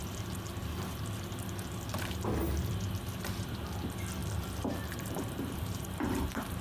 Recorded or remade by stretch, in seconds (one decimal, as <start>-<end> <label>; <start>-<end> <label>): 0.0-4.2 recorded; 4.2-6.6 remade